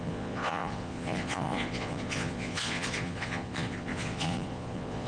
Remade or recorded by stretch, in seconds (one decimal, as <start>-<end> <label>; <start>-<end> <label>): 0.0-5.1 remade